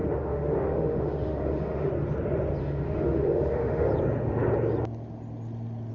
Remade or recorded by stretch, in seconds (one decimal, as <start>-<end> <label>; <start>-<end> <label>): 0.0-1.9 remade; 1.9-2.6 recorded; 2.6-3.9 remade; 3.9-5.9 recorded